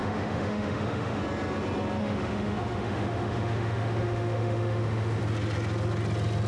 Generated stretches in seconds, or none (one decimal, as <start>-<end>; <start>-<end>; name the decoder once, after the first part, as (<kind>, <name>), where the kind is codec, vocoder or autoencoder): 0.0-1.2 (autoencoder, DAC-VAE); 2.0-5.2